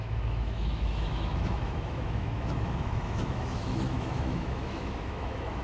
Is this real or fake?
fake